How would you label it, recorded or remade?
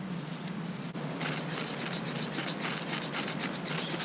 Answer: recorded